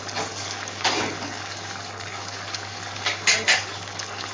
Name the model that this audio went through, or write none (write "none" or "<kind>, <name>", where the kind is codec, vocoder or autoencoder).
codec, DAC